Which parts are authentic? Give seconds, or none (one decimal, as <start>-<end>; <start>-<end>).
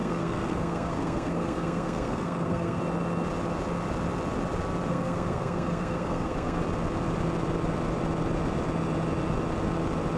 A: 2.8-4.9; 6.6-10.2